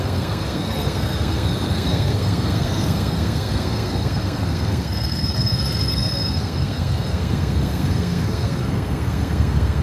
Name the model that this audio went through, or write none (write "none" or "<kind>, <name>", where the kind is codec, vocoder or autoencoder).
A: codec, SNAC